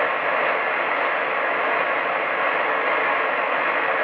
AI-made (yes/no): no